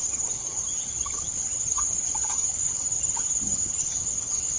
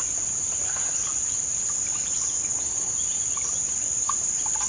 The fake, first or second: first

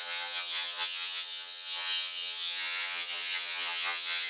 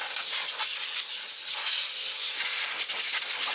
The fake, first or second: first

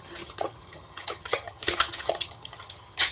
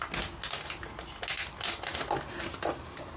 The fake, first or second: first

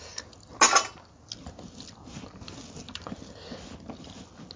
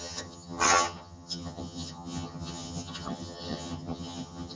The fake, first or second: second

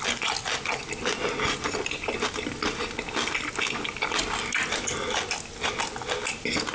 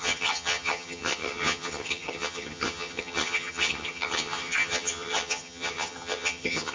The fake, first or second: second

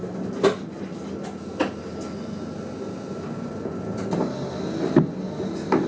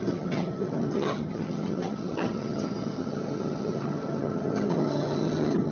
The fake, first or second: second